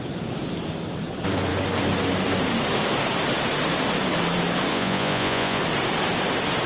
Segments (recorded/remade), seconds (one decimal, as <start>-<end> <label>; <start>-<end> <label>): 0.0-4.7 recorded; 4.7-5.6 remade; 5.6-6.7 recorded